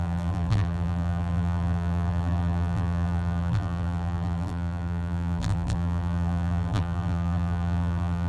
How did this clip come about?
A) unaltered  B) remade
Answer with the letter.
B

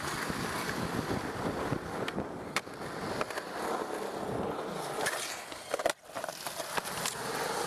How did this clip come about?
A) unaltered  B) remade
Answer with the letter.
A